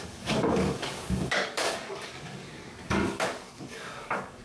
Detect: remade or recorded remade